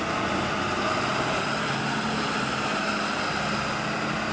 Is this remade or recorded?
recorded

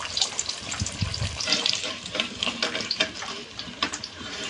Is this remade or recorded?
remade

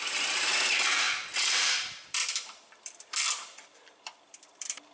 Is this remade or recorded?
remade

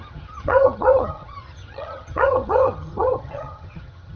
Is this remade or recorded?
remade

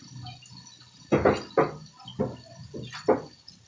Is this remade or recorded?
recorded